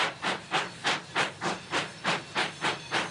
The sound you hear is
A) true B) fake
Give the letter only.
A